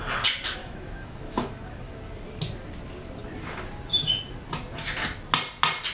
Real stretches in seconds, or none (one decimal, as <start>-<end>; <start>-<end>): 0.0-0.6; 1.8-5.9